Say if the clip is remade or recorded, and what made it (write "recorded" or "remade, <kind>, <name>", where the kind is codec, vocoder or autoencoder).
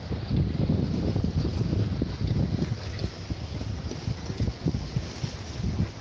recorded